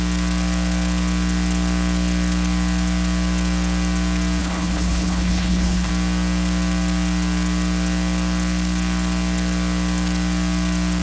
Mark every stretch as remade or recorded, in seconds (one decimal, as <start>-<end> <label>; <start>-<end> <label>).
0.0-4.4 recorded; 4.4-5.9 remade; 5.9-11.0 recorded